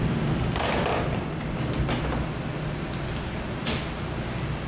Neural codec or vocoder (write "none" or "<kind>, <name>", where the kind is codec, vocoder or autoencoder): none